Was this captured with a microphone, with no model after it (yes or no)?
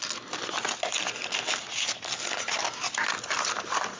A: yes